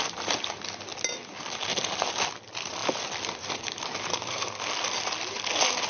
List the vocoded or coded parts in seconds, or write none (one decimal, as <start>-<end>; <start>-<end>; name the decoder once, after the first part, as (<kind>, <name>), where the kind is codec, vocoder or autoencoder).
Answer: 4.1-4.6 (codec, SNAC)

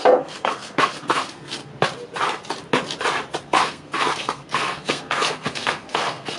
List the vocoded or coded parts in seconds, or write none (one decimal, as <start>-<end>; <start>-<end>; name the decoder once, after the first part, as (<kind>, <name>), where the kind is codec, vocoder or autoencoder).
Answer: 0.0-1.7 (codec, SNAC); 3.4-6.4

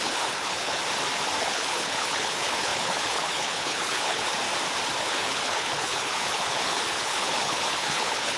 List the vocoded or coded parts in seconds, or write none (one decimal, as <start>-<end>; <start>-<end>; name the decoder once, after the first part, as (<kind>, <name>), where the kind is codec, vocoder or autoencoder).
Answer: 0.0-0.8 (codec, HILCodec); 1.4-4.3; 5.0-8.4